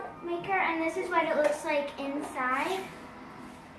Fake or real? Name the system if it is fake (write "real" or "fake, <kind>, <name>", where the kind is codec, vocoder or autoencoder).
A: real